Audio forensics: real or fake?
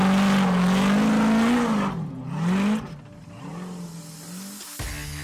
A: real